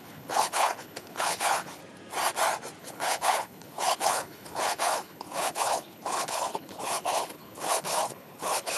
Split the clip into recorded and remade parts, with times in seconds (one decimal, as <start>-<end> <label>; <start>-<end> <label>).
0.0-1.8 remade; 1.8-2.8 recorded; 2.8-8.8 remade